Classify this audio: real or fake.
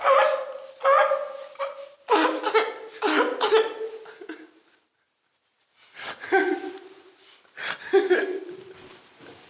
real